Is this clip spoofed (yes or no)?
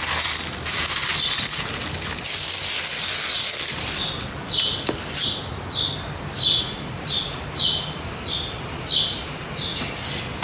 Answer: no